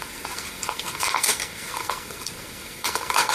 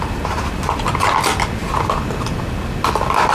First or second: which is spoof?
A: first